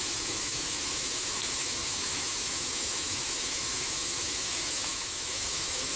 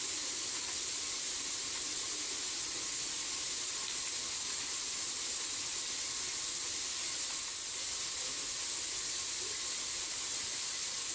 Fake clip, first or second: first